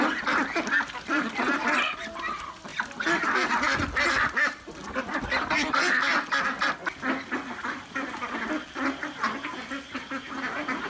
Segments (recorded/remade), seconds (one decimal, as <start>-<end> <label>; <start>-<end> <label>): 0.0-10.9 recorded

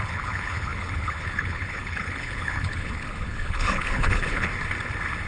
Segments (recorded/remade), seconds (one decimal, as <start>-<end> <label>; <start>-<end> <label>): 0.0-4.5 remade; 4.5-5.3 recorded

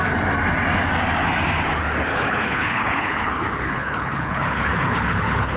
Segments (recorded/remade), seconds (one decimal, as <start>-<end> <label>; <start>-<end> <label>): 0.0-2.1 recorded; 2.1-5.6 remade